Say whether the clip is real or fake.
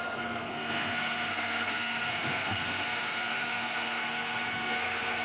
fake